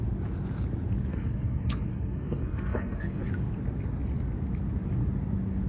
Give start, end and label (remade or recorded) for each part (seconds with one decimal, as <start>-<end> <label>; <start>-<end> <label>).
0.0-1.1 recorded; 1.1-3.3 remade; 3.3-5.7 recorded